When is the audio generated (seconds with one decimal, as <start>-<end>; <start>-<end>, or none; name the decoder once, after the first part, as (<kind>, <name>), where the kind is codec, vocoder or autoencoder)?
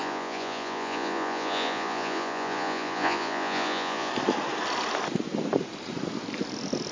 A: 0.0-4.1 (vocoder, Vocos)